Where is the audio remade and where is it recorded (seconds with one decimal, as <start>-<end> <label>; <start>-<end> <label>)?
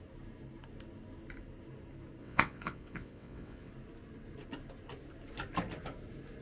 0.0-2.2 recorded; 2.2-3.7 remade; 3.7-6.4 recorded